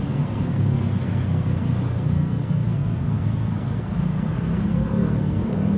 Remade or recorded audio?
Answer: remade